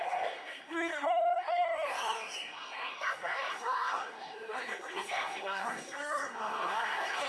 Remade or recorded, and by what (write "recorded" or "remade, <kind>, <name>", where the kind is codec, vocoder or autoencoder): remade, codec, SNAC